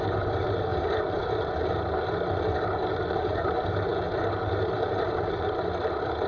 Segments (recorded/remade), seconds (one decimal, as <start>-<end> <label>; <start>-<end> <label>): 0.0-0.7 remade; 0.7-3.1 recorded; 3.1-3.9 remade; 3.9-4.7 recorded; 4.7-6.3 remade